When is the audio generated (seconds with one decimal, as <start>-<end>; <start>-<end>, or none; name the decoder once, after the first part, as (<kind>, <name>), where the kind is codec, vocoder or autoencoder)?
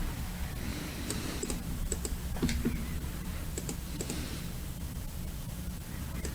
0.7-4.4 (vocoder, BigVGAN v2)